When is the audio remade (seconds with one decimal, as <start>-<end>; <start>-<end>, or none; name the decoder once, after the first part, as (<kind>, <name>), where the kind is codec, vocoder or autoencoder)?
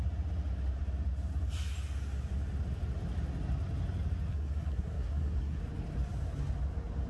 4.3-5.6 (codec, SNAC)